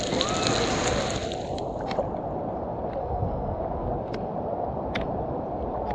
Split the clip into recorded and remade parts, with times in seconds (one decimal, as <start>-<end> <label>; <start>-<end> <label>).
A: 0.0-3.0 recorded; 3.0-3.6 remade; 3.6-5.9 recorded